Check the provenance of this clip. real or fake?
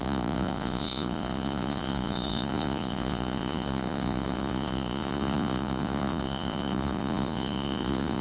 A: fake